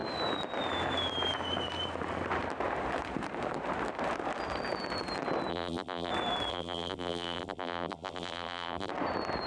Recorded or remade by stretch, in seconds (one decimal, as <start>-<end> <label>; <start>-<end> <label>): 0.0-5.5 recorded; 5.5-6.1 remade; 6.1-6.5 recorded; 6.5-8.9 remade; 8.9-9.5 recorded